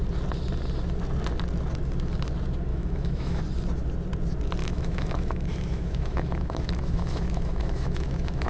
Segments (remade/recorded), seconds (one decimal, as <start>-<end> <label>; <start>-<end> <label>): 0.0-2.7 recorded; 2.7-3.4 remade; 3.4-4.6 recorded; 4.6-8.5 remade